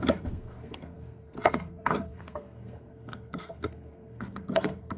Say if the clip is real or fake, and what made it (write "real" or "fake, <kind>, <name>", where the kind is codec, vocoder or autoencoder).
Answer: fake, codec, SNAC